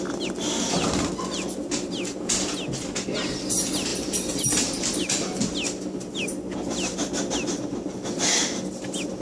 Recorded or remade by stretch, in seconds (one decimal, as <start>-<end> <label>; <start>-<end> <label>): 0.0-9.2 recorded